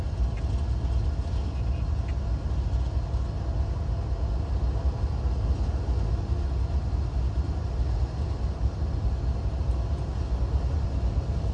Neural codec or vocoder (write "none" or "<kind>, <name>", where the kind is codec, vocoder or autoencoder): none